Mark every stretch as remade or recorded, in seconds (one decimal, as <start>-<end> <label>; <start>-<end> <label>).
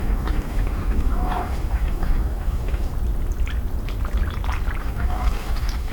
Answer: 0.0-2.9 remade; 2.9-4.8 recorded; 4.8-5.9 remade